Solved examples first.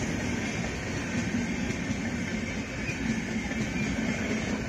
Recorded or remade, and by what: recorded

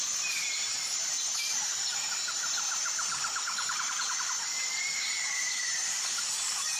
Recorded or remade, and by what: remade, vocoder, BigVGAN v2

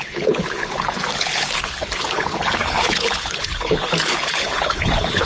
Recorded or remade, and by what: remade, codec, HILCodec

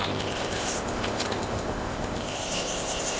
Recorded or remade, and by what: remade, codec, ZipCodec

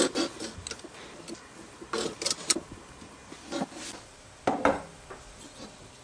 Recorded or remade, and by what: recorded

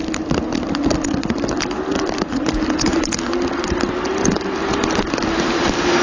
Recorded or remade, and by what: recorded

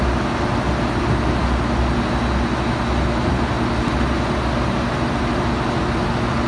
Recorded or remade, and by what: recorded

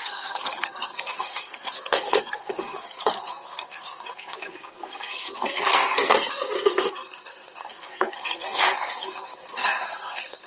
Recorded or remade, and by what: remade, codec, SNAC